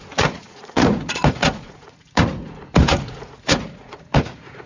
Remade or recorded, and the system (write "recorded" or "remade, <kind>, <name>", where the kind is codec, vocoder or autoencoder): remade, vocoder, Vocos